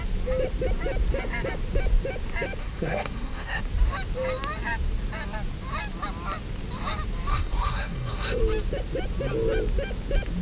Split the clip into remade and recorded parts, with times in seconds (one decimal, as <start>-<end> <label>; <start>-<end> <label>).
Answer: 0.0-2.6 recorded; 2.6-3.6 remade; 3.6-7.3 recorded; 7.3-8.4 remade; 8.4-10.4 recorded